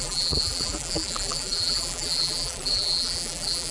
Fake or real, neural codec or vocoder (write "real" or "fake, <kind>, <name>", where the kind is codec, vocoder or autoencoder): fake, vocoder, BigVGAN v2